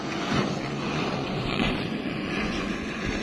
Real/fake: fake